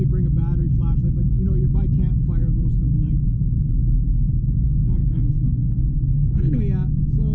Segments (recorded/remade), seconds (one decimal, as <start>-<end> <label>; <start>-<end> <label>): 0.0-5.0 recorded; 5.0-6.6 remade; 6.6-7.3 recorded